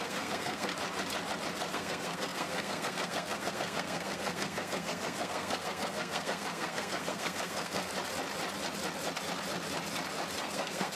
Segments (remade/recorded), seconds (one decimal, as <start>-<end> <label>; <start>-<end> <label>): 0.0-0.7 remade; 0.7-1.7 recorded; 1.7-7.9 remade; 7.9-10.4 recorded; 10.4-10.9 remade